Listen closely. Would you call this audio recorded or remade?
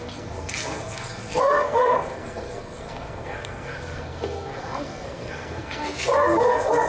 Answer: remade